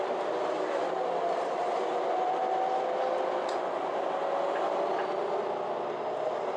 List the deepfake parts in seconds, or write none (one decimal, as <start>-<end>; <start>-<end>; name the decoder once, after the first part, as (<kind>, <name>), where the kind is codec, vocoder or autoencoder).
1.9-2.4 (vocoder, BigVGAN v2)